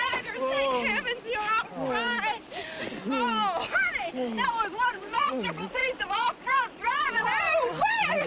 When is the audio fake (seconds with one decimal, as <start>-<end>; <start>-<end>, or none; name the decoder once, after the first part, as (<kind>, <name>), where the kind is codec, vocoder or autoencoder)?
0.0-0.4 (vocoder, Vocos); 4.9-8.3